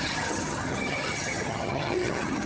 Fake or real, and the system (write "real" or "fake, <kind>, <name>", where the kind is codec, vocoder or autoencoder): fake, vocoder, HiFi-GAN